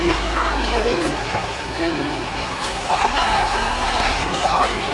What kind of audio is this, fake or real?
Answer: fake